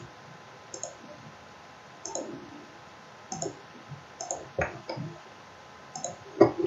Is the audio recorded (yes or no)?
yes